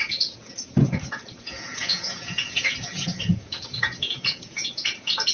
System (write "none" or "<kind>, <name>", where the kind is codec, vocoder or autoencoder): vocoder, Vocos